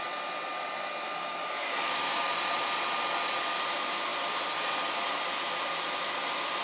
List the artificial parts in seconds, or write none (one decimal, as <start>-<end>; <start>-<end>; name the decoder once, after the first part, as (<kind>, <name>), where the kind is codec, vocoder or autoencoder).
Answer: 1.6-2.3 (codec, DAC)